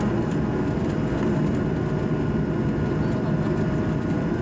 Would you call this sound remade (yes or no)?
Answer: no